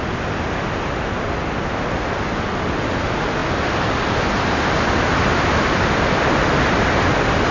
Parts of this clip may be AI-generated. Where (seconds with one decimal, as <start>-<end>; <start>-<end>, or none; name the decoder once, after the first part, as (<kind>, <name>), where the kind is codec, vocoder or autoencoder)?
none